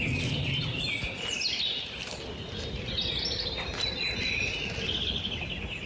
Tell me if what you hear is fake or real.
real